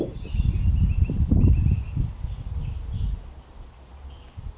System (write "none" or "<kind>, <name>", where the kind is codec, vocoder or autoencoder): none